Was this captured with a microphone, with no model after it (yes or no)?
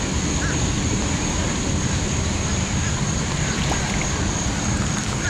yes